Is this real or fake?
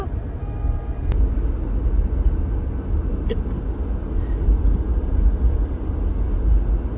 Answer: real